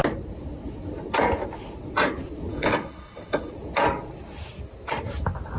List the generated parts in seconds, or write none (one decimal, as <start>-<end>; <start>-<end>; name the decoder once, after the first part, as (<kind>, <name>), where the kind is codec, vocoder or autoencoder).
2.5-3.5 (codec, HILCodec)